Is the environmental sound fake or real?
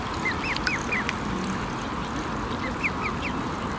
real